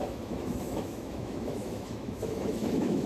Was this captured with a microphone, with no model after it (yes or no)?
no